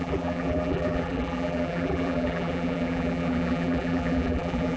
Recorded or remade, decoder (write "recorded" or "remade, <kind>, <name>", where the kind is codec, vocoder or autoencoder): remade, vocoder, BigVGAN v2